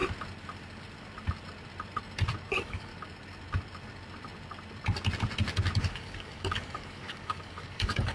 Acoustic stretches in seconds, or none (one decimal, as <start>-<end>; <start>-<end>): 0.0-2.5; 2.9-5.9